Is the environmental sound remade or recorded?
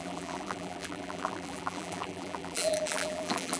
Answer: remade